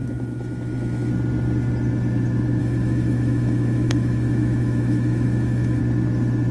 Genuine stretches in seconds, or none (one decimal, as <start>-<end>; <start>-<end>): 1.1-2.6; 5.8-6.5